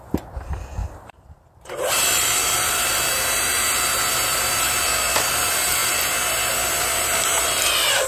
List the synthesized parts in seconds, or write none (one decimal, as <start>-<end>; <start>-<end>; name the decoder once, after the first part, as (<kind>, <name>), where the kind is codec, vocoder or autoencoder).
0.8-4.8 (vocoder, BigVGAN v2)